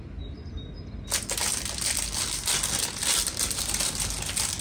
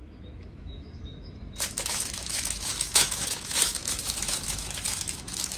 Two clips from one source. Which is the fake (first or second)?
second